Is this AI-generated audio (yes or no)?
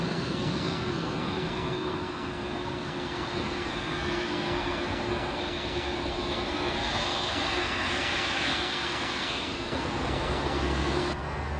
yes